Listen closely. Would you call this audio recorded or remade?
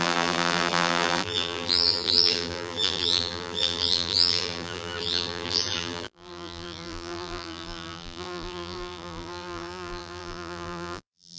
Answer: remade